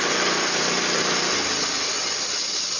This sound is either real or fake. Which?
real